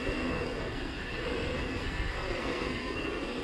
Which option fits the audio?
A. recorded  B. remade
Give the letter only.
B